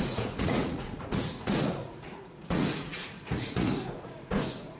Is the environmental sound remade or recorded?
remade